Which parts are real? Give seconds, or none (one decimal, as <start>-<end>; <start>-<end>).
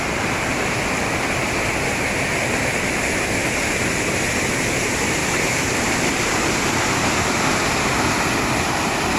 0.0-5.2; 8.3-9.2